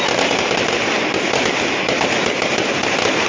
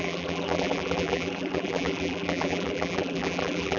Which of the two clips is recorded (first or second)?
first